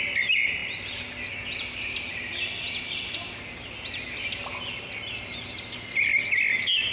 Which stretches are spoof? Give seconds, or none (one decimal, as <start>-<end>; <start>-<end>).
none